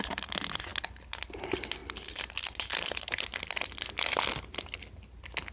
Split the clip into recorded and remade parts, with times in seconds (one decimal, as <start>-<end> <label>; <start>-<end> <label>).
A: 0.0-0.7 recorded; 0.7-1.4 remade; 1.4-1.8 recorded; 1.8-3.8 remade; 3.8-5.5 recorded